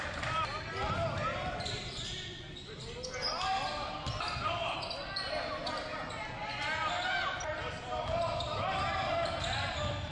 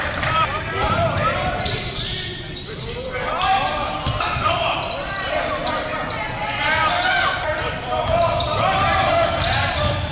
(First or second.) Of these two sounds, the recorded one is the first